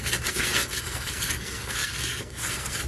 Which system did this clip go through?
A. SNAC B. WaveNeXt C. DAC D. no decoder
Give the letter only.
A